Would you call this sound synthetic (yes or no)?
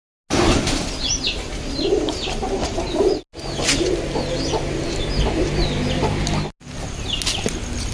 no